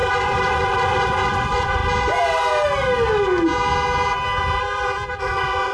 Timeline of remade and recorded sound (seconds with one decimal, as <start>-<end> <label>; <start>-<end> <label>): 0.0-1.8 remade; 1.8-5.2 recorded; 5.2-5.7 remade